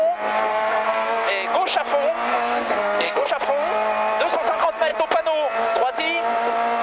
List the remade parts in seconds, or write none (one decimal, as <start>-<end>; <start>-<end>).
0.5-1.3; 2.3-3.3